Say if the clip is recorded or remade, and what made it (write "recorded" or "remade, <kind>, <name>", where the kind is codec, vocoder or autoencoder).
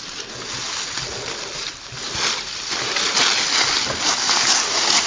recorded